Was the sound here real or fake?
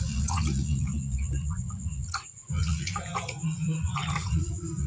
fake